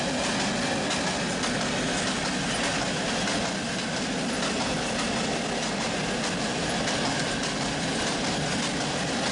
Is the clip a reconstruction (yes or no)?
no